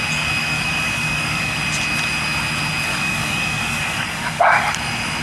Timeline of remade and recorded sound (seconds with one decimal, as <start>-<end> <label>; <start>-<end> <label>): 0.0-0.4 recorded; 0.4-1.6 remade; 1.6-2.9 recorded; 2.9-4.7 remade; 4.7-5.2 recorded